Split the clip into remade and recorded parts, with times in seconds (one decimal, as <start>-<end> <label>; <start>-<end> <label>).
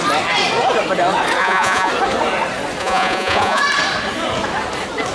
0.0-1.4 recorded; 1.4-1.9 remade; 1.9-2.8 recorded; 2.8-3.6 remade; 3.6-5.1 recorded